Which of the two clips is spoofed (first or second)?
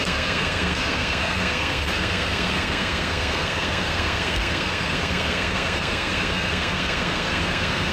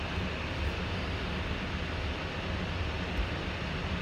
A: first